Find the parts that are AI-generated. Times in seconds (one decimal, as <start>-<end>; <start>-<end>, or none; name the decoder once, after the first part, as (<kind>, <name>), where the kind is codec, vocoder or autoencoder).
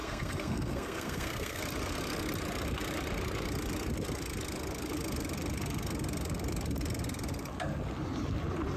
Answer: 0.0-1.6 (codec, SNAC)